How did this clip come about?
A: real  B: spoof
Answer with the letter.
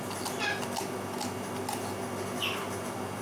A